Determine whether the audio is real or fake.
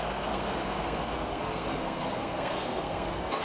fake